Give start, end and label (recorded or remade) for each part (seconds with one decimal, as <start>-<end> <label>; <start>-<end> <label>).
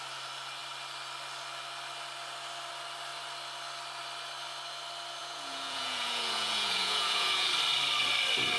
0.0-5.2 recorded; 5.2-7.5 remade; 7.5-8.6 recorded